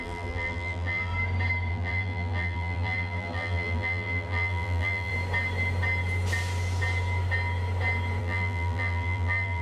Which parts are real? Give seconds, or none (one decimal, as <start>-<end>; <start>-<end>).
1.1-1.7; 5.1-8.2